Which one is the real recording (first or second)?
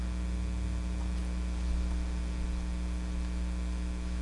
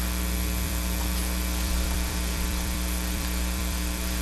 first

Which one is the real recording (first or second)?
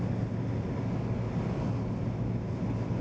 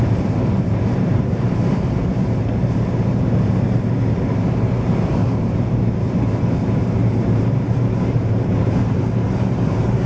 first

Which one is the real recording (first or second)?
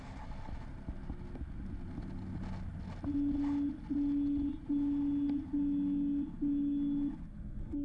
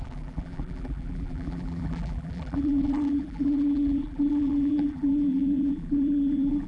first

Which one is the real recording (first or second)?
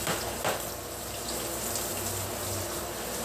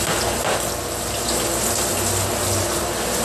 second